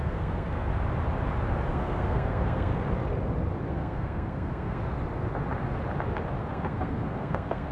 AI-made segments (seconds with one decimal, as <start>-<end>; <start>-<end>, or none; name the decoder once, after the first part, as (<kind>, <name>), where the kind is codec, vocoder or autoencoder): 0.0-0.7 (codec, SNAC); 1.7-2.7; 3.7-4.8; 6.5-7.7